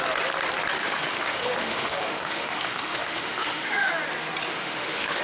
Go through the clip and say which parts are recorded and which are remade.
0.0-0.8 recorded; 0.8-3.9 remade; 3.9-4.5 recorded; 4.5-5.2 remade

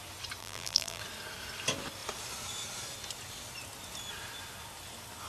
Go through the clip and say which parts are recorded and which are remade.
0.0-0.4 recorded; 0.4-1.0 remade; 1.0-5.3 recorded

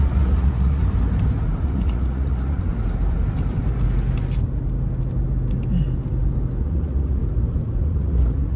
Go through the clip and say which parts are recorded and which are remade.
0.0-0.8 remade; 0.8-1.6 recorded; 1.6-2.7 remade; 2.7-6.6 recorded; 6.6-7.2 remade; 7.2-7.8 recorded; 7.8-8.6 remade

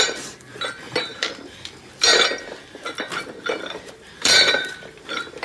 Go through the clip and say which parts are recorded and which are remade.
0.0-2.1 remade; 2.1-3.4 recorded; 3.4-5.4 remade

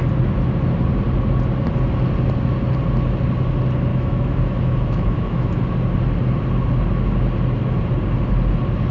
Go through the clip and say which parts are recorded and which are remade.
0.0-3.9 recorded; 3.9-5.6 remade; 5.6-8.9 recorded

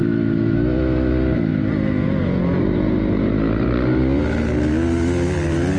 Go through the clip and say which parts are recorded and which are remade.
0.0-1.1 remade; 1.1-5.8 recorded

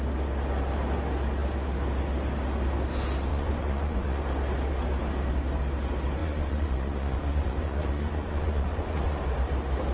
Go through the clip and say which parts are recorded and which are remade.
0.0-3.3 recorded; 3.3-4.2 remade; 4.2-6.2 recorded; 6.2-9.2 remade; 9.2-9.9 recorded

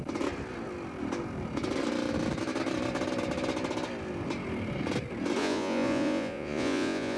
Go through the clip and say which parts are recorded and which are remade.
0.0-5.4 recorded; 5.4-7.2 remade